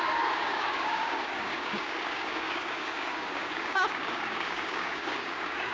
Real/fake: fake